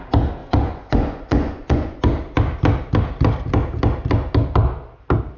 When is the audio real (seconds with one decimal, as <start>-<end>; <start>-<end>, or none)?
0.0-0.4; 2.0-5.4